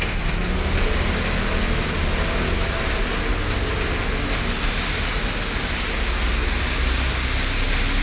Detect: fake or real real